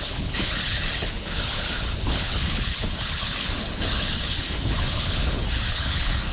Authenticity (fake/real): fake